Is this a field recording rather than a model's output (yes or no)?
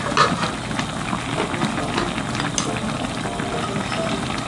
yes